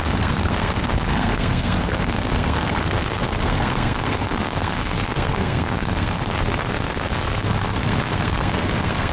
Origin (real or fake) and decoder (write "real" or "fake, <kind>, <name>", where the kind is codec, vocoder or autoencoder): fake, codec, SNAC